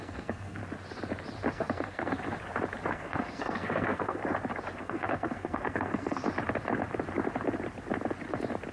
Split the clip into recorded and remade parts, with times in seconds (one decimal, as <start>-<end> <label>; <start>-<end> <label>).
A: 0.0-0.6 remade; 0.6-1.5 recorded; 1.5-2.1 remade; 2.1-2.9 recorded; 2.9-4.2 remade; 4.2-4.8 recorded; 4.8-6.2 remade; 6.2-8.7 recorded